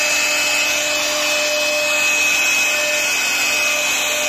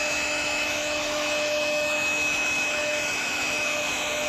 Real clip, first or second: first